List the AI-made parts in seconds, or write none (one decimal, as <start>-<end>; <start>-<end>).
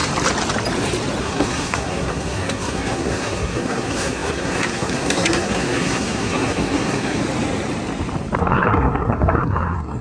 1.2-7.2; 8.4-10.0